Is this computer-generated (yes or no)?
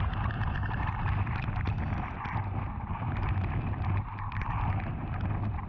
no